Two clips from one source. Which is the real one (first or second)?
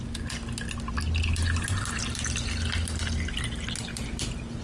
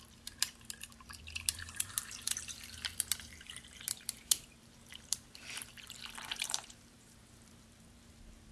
first